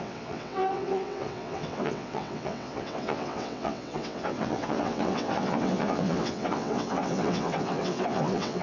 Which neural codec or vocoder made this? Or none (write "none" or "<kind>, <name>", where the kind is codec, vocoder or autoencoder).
vocoder, WaveNeXt